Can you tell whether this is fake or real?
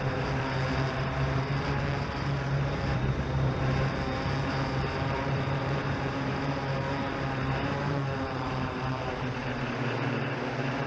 fake